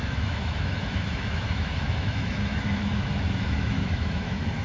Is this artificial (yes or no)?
yes